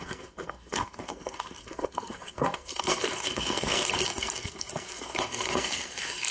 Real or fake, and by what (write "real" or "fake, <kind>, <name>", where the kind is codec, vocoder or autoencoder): fake, codec, SNAC